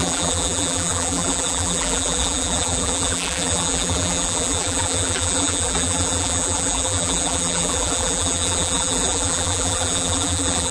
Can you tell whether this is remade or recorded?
remade